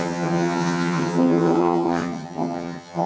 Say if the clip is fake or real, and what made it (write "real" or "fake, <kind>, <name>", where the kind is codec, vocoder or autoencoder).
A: fake, vocoder, HiFi-GAN